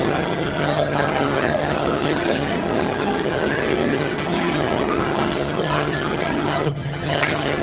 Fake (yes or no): yes